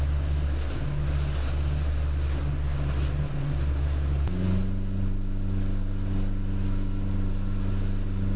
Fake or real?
real